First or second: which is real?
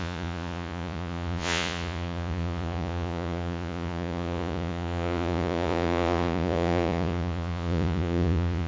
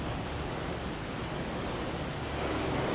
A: second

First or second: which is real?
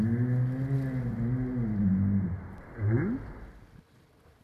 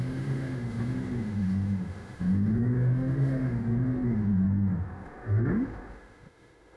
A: first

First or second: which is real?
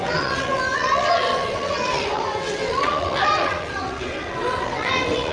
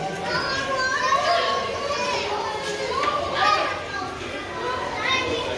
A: second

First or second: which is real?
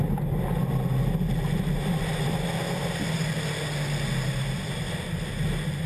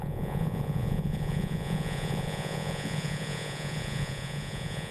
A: first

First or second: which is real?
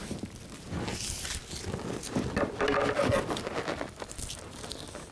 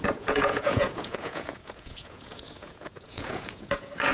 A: first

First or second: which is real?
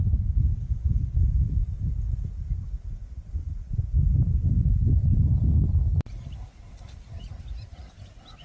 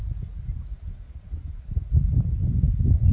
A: second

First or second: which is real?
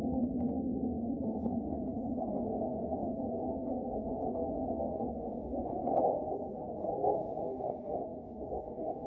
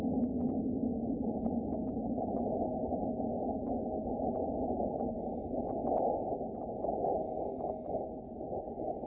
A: second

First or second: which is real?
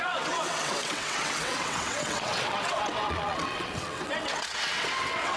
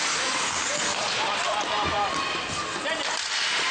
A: second